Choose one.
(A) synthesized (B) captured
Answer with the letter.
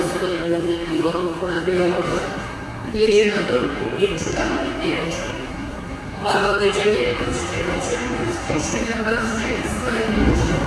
A